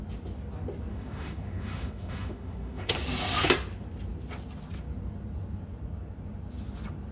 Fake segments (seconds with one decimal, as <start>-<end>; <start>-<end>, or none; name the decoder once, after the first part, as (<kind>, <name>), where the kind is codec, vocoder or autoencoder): 0.9-2.9 (autoencoder, DAC-VAE)